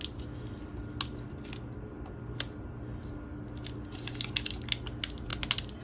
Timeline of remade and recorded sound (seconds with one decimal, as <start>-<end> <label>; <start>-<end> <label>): 0.0-5.8 recorded